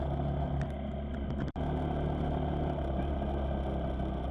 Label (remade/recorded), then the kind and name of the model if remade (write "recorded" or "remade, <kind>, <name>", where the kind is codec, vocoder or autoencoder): recorded